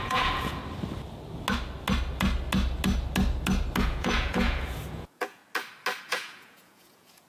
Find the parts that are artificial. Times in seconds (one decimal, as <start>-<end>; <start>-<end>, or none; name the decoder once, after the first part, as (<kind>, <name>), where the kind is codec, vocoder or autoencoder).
0.0-0.6 (vocoder, Vocos); 3.8-5.4; 6.0-7.3